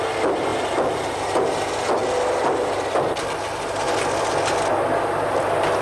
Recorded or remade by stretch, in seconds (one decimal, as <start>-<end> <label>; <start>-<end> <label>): 0.0-0.5 recorded; 0.5-1.6 remade; 1.6-5.8 recorded